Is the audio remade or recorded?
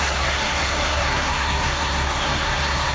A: remade